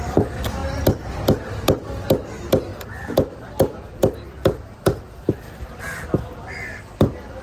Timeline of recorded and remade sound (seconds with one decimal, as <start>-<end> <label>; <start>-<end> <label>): 0.0-7.4 recorded